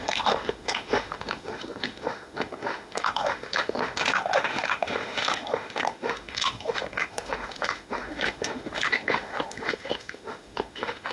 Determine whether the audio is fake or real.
fake